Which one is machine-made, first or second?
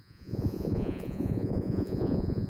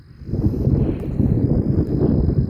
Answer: first